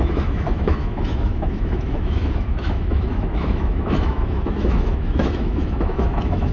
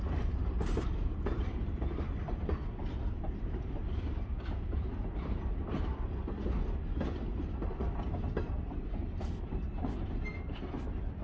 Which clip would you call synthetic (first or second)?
first